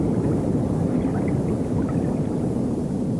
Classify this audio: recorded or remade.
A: recorded